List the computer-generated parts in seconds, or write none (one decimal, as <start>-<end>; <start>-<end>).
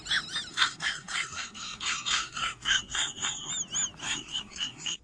0.5-3.5; 4.0-5.0